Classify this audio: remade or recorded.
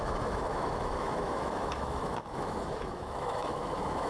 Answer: remade